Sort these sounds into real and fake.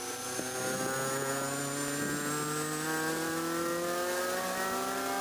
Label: real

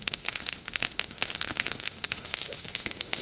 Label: fake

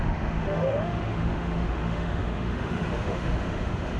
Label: fake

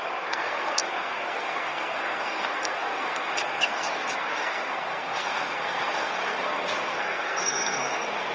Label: fake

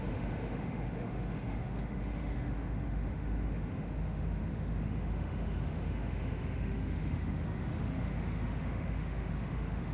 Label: fake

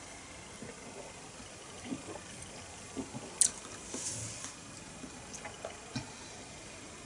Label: real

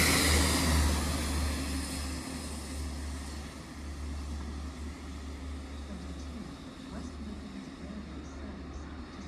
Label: real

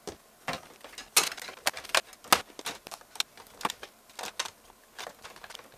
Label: real